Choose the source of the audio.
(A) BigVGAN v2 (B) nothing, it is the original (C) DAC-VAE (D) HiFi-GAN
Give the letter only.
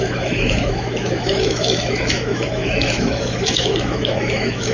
C